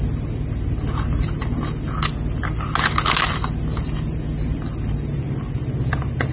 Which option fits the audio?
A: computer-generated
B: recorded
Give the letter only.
B